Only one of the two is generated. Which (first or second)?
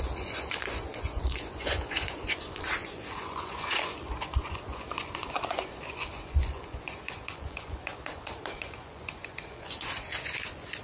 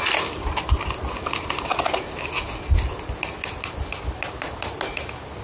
first